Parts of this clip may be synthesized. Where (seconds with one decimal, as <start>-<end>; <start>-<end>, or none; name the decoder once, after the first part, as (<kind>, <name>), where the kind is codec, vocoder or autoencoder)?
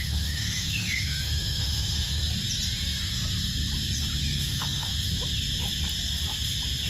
0.0-2.2 (autoencoder, DAC-VAE); 4.2-4.9